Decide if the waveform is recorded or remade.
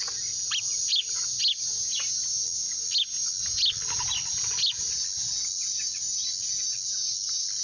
recorded